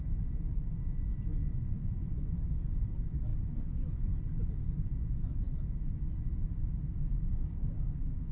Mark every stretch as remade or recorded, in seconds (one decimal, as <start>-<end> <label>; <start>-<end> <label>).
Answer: 0.0-1.4 recorded; 1.4-2.4 remade; 2.4-8.3 recorded